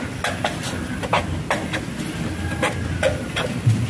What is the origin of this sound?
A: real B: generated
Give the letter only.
A